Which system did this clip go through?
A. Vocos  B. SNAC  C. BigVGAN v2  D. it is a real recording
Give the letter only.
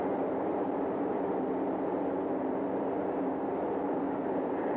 C